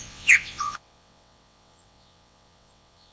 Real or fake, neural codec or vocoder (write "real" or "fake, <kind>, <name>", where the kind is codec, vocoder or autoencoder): fake, vocoder, WaveNeXt